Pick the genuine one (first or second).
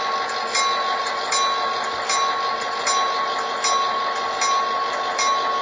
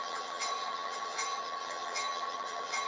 first